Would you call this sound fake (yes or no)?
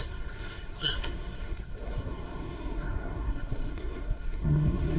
yes